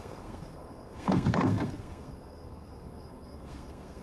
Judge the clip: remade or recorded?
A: remade